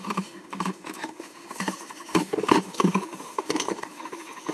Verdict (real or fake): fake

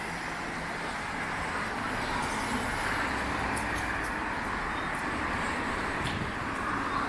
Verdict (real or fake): real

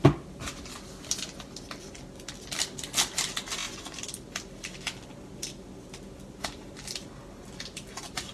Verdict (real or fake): real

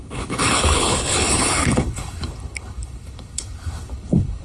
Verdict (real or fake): fake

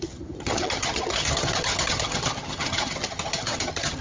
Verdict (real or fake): fake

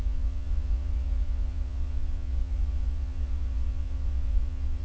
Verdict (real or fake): fake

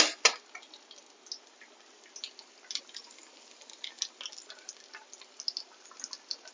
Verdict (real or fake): real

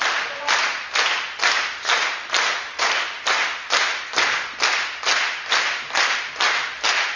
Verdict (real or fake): real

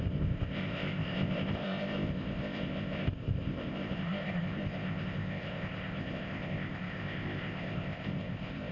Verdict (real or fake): fake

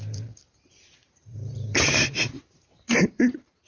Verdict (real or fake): fake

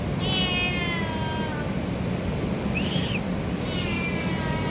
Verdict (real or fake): real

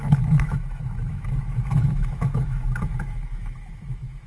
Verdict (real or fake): fake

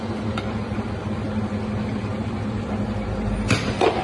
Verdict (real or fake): real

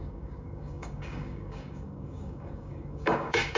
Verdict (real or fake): fake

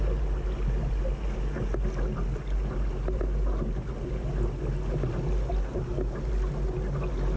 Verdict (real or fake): real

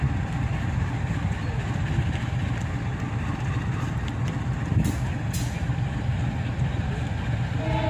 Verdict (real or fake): real